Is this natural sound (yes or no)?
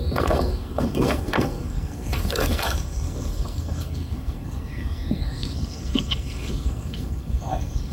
no